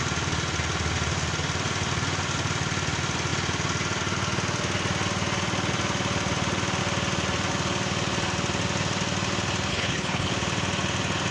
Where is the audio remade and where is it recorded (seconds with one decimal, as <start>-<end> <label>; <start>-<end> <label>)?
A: 0.0-9.7 recorded; 9.7-10.3 remade; 10.3-11.3 recorded

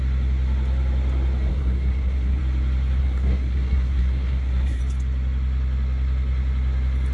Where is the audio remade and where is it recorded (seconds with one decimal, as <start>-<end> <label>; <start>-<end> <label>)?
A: 0.0-1.5 recorded; 1.5-2.4 remade; 2.4-3.0 recorded; 3.0-4.8 remade; 4.8-7.1 recorded

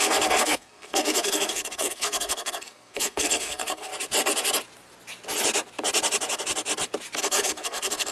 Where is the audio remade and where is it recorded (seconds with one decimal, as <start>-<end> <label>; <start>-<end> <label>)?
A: 0.0-3.9 remade; 3.9-7.2 recorded; 7.2-8.1 remade